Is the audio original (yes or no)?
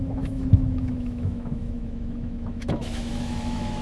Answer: no